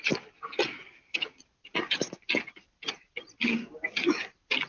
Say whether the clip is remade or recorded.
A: recorded